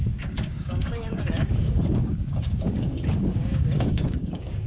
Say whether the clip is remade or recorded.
remade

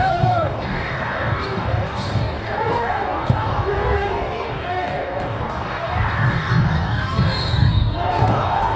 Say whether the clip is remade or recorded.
remade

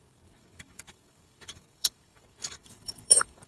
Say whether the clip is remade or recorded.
remade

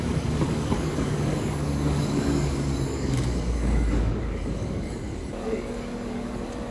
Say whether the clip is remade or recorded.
remade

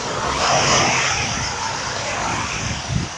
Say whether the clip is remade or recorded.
remade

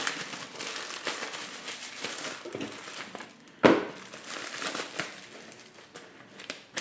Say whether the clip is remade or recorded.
recorded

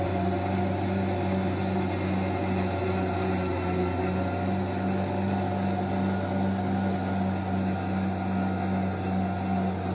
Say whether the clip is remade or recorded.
recorded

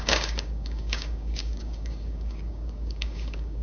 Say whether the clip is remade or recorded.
remade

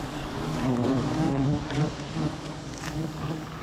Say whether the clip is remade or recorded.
remade